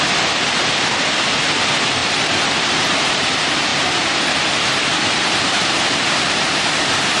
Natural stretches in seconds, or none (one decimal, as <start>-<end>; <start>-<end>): 0.0-2.0; 3.3-3.7; 6.6-7.2